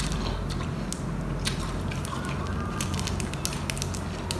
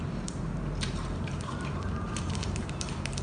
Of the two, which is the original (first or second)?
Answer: first